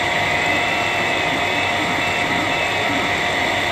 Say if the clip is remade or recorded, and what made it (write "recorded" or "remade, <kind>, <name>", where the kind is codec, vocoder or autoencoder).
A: remade, vocoder, BigVGAN v2